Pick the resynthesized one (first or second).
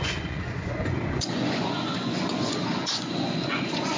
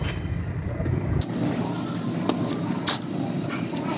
first